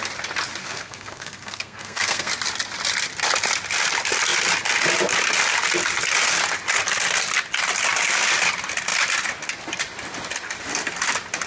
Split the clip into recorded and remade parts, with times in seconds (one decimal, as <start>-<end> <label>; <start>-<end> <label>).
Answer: 0.0-0.6 recorded; 0.6-2.3 remade; 2.3-11.5 recorded